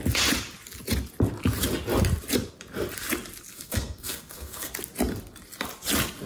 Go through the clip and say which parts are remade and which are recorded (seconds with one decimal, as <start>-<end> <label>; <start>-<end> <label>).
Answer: 0.0-3.5 recorded; 3.5-4.7 remade; 4.7-6.3 recorded